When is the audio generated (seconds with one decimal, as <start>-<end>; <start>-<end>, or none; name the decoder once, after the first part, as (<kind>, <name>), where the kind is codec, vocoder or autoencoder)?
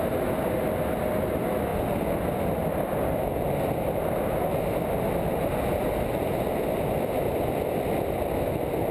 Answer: none